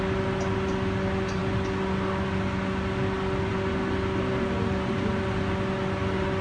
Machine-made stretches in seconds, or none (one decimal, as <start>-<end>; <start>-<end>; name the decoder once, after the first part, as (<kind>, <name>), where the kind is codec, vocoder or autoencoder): none